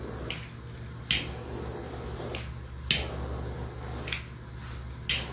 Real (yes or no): yes